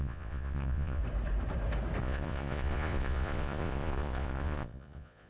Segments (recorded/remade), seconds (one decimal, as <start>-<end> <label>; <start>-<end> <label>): 0.0-1.0 remade; 1.0-2.0 recorded; 2.0-5.3 remade